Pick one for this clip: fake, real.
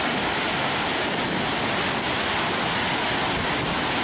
real